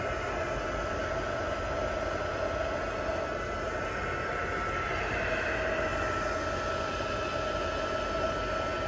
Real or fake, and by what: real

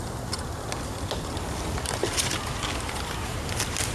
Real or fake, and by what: real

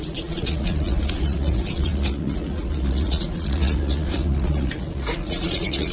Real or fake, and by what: fake, vocoder, Vocos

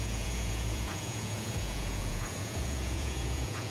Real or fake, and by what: fake, vocoder, Vocos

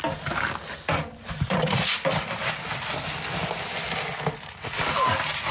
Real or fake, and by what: real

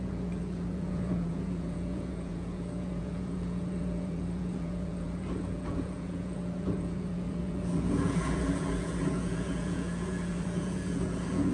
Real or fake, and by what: fake, vocoder, Vocos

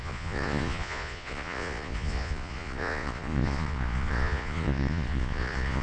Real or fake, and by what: fake, vocoder, Vocos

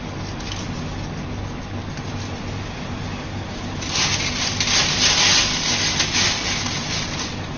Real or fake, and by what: real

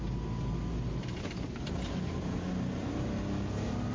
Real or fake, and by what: real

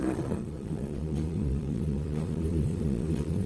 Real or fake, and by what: fake, vocoder, Vocos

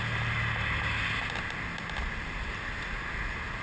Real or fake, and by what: real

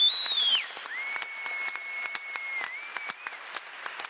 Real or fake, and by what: real